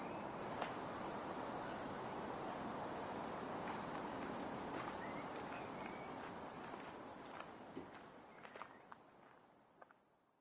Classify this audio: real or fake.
fake